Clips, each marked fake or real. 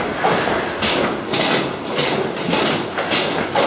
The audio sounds real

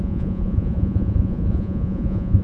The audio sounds fake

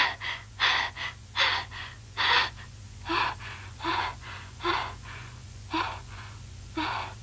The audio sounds fake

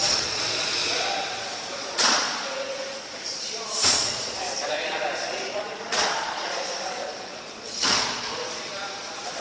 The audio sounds fake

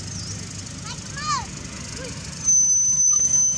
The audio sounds real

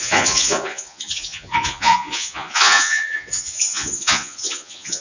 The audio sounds fake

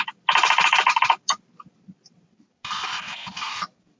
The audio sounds real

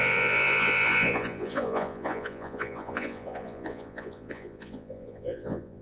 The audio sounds fake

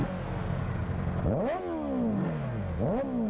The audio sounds real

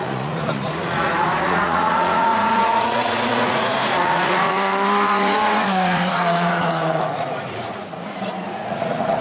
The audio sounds fake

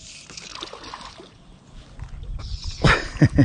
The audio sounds real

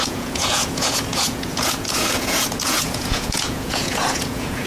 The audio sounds fake